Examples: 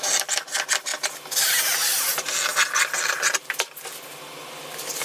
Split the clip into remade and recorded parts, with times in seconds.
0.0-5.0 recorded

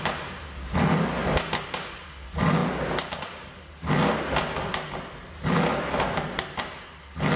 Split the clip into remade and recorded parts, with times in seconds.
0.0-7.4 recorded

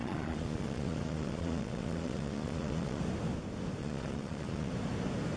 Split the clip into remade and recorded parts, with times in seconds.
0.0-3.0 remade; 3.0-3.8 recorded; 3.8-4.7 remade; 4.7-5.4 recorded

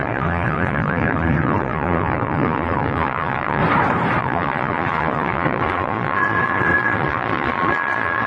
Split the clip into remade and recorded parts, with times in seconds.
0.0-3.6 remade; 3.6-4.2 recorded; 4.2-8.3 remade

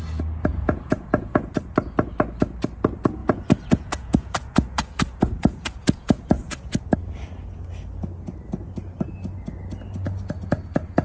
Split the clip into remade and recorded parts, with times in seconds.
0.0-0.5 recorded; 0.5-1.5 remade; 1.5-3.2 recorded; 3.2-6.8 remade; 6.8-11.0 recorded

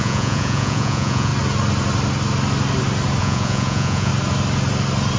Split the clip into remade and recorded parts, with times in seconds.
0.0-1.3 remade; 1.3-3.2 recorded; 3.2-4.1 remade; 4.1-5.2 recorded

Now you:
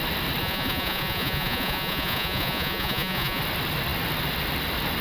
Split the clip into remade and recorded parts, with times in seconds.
0.0-0.4 recorded; 0.4-3.4 remade; 3.4-5.0 recorded